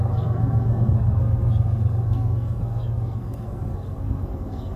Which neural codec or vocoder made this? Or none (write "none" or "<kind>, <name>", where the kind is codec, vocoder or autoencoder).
codec, SNAC